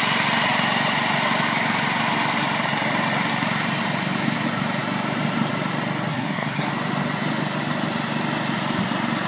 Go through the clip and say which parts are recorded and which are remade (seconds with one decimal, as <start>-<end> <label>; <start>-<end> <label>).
0.0-6.1 recorded; 6.1-6.7 remade; 6.7-9.3 recorded